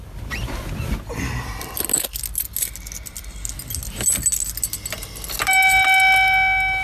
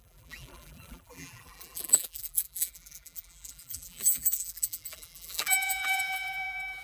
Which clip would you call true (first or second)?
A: first